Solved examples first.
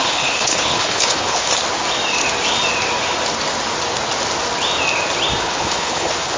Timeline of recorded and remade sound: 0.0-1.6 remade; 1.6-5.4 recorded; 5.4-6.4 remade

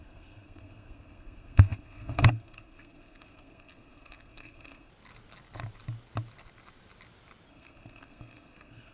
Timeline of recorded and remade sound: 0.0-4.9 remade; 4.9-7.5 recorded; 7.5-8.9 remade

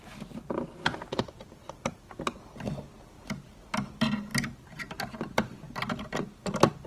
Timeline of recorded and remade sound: 0.0-6.9 recorded

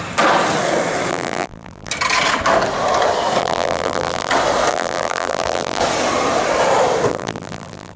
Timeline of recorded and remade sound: 0.0-1.1 recorded; 1.1-1.9 remade; 1.9-3.4 recorded; 3.4-4.3 remade; 4.3-4.7 recorded; 4.7-5.8 remade; 5.8-7.1 recorded; 7.1-8.0 remade

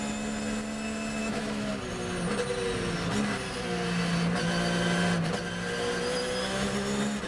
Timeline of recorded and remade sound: 0.0-1.2 recorded; 1.2-1.7 remade; 1.7-7.3 recorded

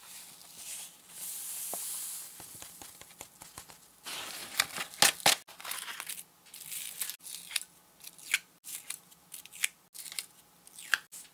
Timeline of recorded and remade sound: 0.0-11.3 recorded